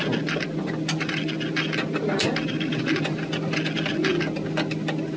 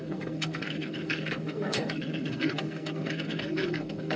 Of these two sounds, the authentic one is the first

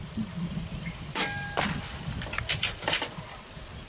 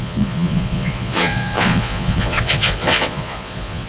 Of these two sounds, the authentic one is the first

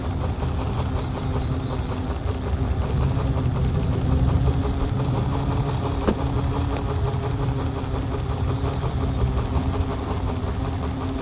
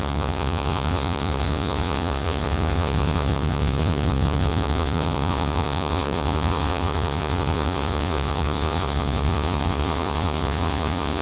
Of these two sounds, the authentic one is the first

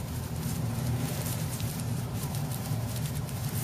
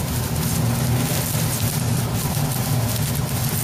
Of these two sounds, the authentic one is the second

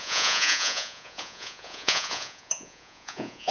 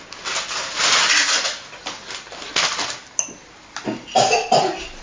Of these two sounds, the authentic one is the second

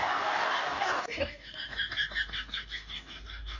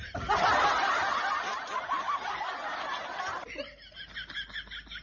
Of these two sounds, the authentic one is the second